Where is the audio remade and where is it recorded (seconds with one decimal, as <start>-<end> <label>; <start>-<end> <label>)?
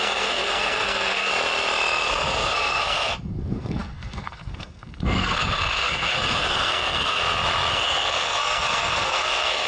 0.0-1.3 remade; 1.3-2.1 recorded; 2.1-7.2 remade; 7.2-7.7 recorded; 7.7-9.7 remade